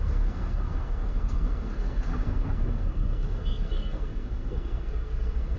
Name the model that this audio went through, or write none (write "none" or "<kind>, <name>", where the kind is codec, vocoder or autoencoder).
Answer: codec, SNAC